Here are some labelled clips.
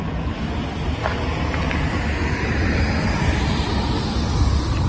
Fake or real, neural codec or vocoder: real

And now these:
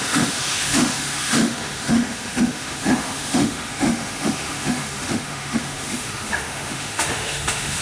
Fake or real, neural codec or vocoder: fake, autoencoder, DAC-VAE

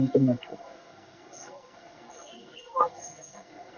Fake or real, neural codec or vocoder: fake, codec, SNAC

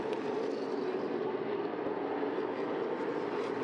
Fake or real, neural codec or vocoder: real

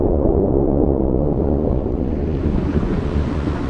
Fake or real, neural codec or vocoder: fake, vocoder, Vocos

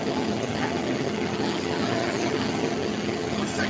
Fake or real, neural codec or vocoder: fake, vocoder, HiFi-GAN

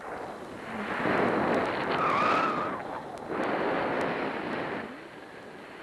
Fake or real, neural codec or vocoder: real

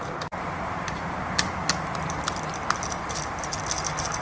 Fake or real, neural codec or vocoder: real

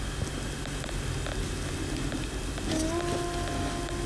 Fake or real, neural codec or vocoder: real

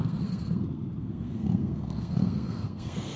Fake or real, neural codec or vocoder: fake, codec, SNAC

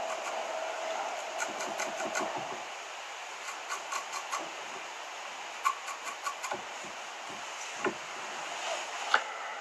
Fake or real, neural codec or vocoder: real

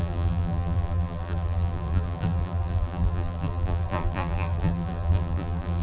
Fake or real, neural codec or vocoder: fake, vocoder, BigVGAN v2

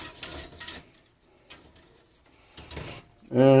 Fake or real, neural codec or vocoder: real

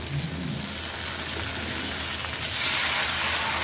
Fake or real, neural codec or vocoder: real